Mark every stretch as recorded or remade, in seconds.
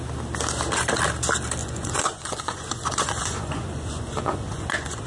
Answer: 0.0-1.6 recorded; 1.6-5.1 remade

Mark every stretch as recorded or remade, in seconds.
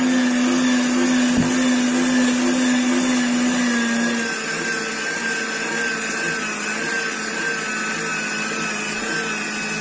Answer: 0.0-9.8 recorded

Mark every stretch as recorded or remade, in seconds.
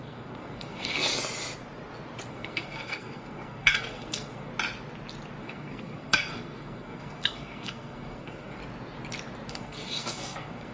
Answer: 0.0-1.1 remade; 1.1-2.3 recorded; 2.3-4.5 remade; 4.5-5.4 recorded; 5.4-8.6 remade; 8.6-9.5 recorded; 9.5-10.7 remade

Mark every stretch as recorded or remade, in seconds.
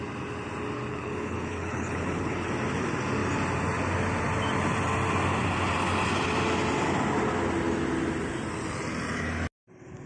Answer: 0.0-0.9 recorded; 0.9-2.5 remade; 2.5-10.1 recorded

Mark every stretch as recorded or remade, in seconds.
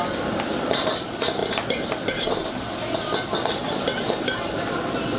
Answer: 0.0-5.2 recorded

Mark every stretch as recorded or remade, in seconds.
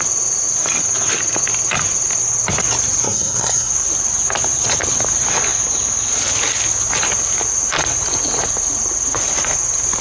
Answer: 0.0-3.0 recorded; 3.0-3.7 remade; 3.7-10.0 recorded